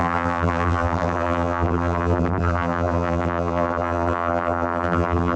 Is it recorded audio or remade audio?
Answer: remade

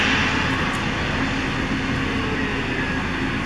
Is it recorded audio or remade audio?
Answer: recorded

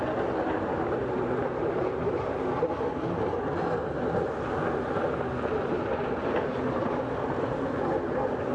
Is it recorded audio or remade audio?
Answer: recorded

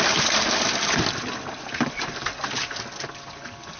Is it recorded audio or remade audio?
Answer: recorded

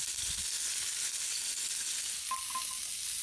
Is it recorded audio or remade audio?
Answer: recorded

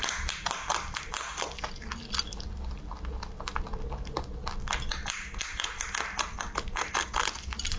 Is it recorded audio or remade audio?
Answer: recorded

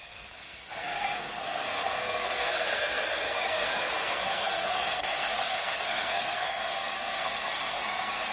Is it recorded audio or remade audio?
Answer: remade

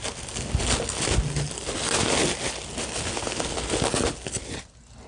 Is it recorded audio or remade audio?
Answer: recorded